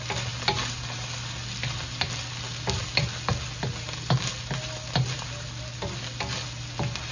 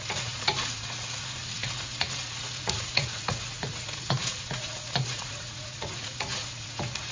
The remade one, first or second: second